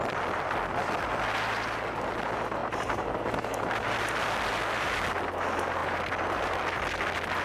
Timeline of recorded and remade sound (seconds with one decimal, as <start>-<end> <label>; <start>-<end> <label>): 0.0-5.8 recorded; 5.8-6.5 remade; 6.5-7.4 recorded